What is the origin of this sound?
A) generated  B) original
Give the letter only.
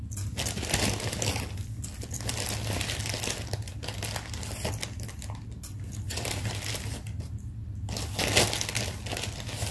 B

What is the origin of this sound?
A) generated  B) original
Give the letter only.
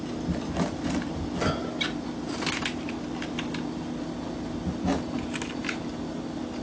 B